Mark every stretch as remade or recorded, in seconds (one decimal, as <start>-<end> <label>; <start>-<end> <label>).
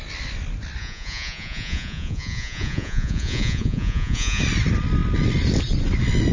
0.0-0.8 recorded; 0.8-4.4 remade; 4.4-6.3 recorded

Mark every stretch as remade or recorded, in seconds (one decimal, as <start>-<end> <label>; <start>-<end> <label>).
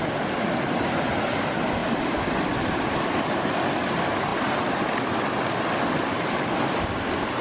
0.0-7.4 recorded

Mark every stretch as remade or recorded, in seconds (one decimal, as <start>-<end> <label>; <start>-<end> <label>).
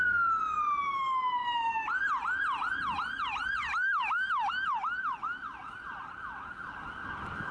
0.0-1.4 recorded; 1.4-4.5 remade; 4.5-7.5 recorded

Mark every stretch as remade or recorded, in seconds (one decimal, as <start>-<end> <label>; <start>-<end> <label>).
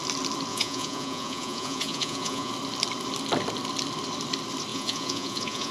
0.0-0.5 recorded; 0.5-2.5 remade; 2.5-4.7 recorded; 4.7-5.7 remade